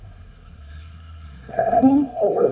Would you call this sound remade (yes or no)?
yes